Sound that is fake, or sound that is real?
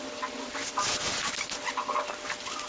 real